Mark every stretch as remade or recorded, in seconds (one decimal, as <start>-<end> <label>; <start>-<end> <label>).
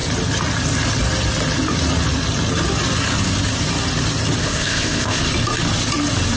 0.0-4.4 recorded; 4.4-5.2 remade; 5.2-6.4 recorded